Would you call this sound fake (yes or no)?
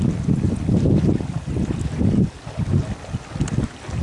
no